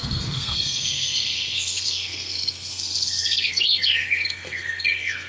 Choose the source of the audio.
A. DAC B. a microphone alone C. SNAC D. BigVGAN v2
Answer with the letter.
C